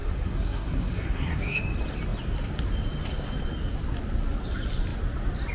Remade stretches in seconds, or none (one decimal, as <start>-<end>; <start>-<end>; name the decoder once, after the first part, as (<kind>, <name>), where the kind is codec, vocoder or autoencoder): 0.0-1.6 (codec, SNAC)